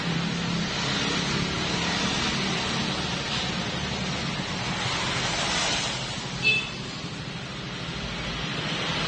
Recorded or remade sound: recorded